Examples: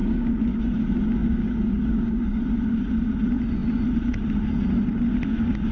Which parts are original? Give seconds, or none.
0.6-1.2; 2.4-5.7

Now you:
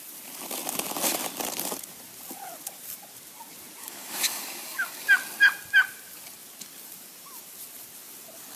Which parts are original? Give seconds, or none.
0.0-3.8; 5.0-8.6

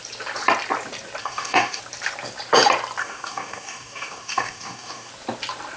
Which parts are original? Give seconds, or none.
0.0-1.2; 1.8-3.0; 5.1-5.8

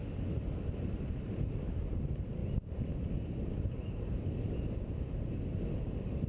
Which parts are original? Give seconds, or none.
0.0-6.3

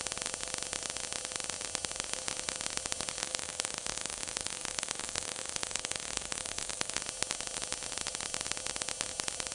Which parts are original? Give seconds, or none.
0.0-3.2; 7.0-9.5

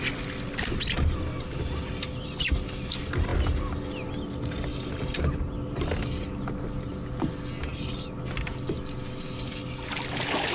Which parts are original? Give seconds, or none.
0.0-10.5

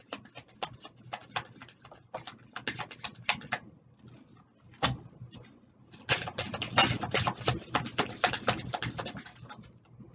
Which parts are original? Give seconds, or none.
0.0-10.1

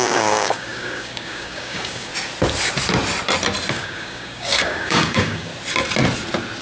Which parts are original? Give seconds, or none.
2.1-3.7; 5.5-6.6